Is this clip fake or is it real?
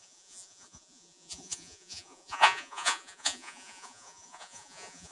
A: fake